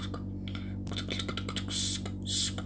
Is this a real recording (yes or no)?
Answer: yes